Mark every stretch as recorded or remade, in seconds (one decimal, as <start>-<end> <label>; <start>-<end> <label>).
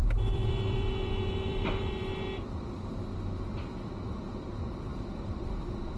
0.0-3.6 remade; 3.6-4.9 recorded; 4.9-5.5 remade; 5.5-6.0 recorded